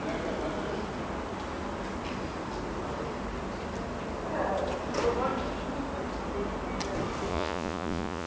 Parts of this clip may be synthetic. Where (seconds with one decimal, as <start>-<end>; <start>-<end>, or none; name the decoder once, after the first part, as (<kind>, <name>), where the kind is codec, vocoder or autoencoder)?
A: 7.3-8.3 (vocoder, Vocos)